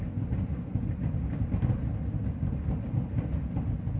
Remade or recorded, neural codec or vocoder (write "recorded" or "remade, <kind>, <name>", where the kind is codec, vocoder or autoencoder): recorded